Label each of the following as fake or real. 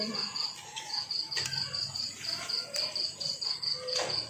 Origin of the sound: real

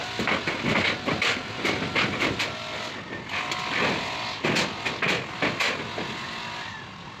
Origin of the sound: real